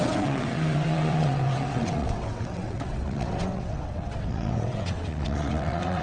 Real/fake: fake